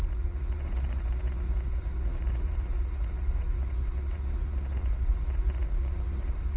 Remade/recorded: remade